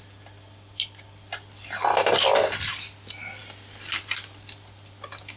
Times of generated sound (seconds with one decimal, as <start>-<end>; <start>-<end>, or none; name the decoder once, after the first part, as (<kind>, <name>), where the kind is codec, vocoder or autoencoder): none